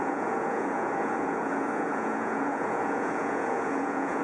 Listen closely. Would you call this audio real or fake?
fake